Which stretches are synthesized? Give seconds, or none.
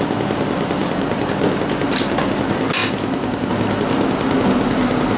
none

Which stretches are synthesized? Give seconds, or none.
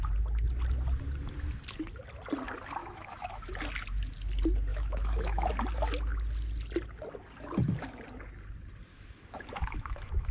2.8-3.4 (autoencoder, DAC-VAE); 4.7-5.5; 8.9-10.3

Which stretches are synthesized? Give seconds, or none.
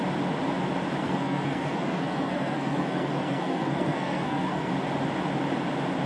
1.0-4.7 (codec, SNAC)